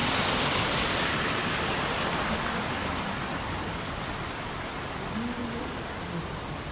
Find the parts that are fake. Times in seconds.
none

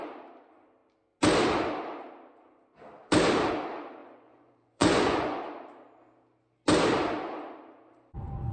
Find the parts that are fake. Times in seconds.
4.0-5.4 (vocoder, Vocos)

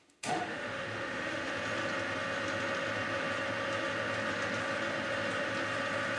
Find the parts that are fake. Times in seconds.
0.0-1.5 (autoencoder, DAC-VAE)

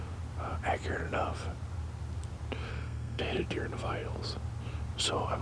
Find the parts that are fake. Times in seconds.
2.7-3.2 (codec, SNAC)

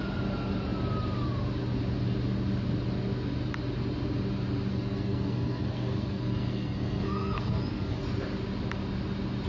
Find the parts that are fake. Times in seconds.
4.7-8.0 (codec, SNAC)

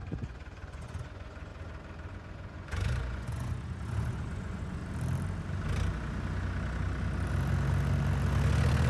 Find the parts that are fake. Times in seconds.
0.0-1.5 (vocoder, Vocos); 2.1-4.8

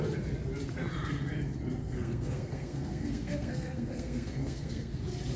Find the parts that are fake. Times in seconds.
1.8-4.9 (codec, SNAC)